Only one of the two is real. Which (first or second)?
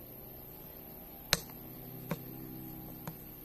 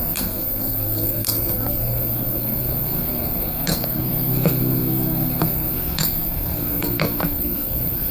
first